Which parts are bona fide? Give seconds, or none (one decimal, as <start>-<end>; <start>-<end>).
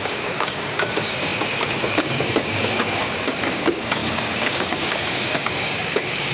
none